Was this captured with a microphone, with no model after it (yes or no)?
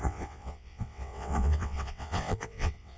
no